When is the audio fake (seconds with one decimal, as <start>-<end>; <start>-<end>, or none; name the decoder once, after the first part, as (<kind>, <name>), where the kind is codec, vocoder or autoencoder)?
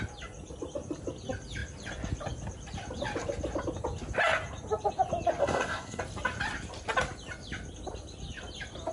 5.4-6.0 (codec, SNAC)